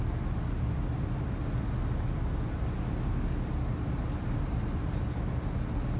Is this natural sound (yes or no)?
yes